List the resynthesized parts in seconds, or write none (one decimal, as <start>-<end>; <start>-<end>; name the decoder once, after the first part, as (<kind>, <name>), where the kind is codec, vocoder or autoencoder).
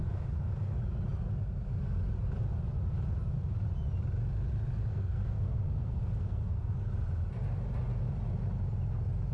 4.9-6.9 (codec, SNAC)